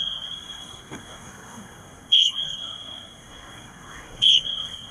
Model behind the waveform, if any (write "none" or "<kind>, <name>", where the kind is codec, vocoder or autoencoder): codec, SNAC